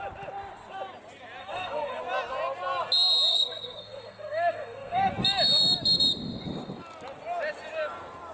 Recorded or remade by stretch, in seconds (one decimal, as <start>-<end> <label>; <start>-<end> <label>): 0.0-1.4 recorded; 1.4-2.0 remade; 2.0-3.3 recorded; 3.3-5.1 remade; 5.1-8.3 recorded